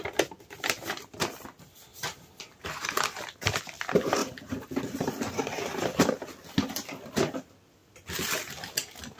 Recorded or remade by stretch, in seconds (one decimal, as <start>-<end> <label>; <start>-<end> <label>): 0.0-1.9 remade; 1.9-3.0 recorded; 3.0-9.2 remade